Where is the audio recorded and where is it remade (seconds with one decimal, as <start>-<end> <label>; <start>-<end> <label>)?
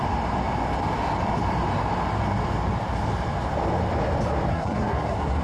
0.0-4.5 recorded; 4.5-5.4 remade